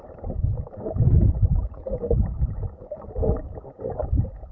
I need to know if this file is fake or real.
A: real